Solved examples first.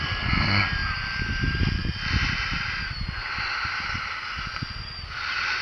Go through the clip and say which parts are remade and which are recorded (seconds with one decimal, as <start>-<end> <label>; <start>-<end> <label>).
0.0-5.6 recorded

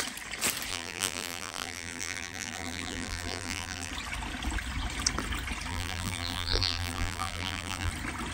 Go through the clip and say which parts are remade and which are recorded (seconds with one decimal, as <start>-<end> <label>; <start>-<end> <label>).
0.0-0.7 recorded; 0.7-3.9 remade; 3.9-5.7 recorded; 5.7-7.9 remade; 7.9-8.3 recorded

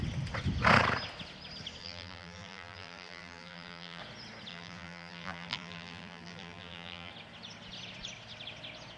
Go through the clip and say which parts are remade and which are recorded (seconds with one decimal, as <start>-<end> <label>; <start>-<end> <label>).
0.0-1.8 recorded; 1.8-4.0 remade; 4.0-4.5 recorded; 4.5-7.1 remade; 7.1-9.0 recorded